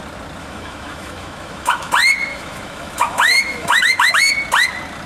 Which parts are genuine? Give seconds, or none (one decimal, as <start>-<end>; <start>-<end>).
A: 0.0-0.4; 1.9-2.3; 4.2-5.1